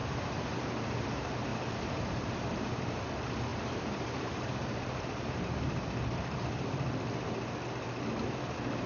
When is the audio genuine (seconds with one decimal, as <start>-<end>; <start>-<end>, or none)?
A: 0.6-1.5; 2.8-3.5; 5.6-8.9